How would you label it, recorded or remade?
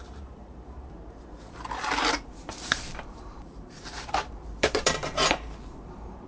remade